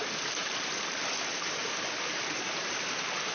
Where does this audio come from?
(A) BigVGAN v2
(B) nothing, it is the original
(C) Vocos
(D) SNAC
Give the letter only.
B